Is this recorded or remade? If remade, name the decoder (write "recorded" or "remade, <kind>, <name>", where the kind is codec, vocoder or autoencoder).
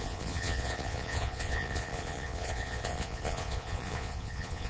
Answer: remade, vocoder, Vocos